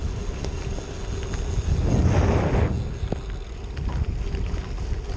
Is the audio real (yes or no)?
yes